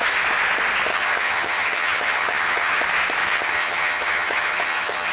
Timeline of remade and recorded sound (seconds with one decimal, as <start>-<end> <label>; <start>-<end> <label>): 0.0-0.9 recorded; 0.9-2.8 remade; 2.8-3.2 recorded; 3.2-5.1 remade